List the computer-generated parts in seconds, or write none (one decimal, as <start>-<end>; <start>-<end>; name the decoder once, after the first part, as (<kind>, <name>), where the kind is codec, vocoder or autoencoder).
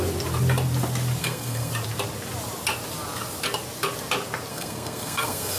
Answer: 1.2-1.7 (codec, SNAC); 4.5-5.6